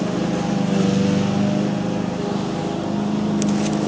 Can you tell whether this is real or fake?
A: real